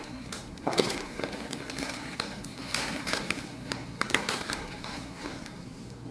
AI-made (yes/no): yes